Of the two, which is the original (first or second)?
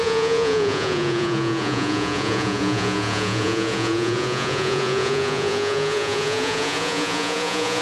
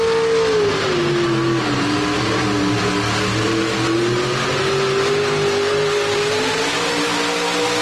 second